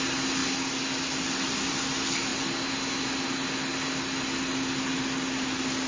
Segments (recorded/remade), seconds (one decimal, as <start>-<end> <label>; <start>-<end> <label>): 0.0-5.9 recorded